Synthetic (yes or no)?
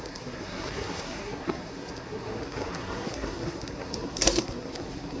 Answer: yes